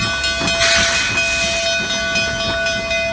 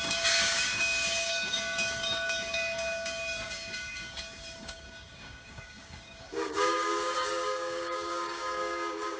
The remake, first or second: second